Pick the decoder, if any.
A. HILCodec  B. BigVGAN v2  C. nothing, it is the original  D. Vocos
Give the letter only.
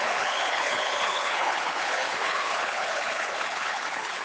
A